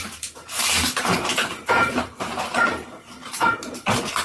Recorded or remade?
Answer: remade